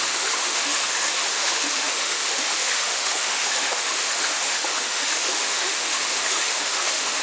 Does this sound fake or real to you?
fake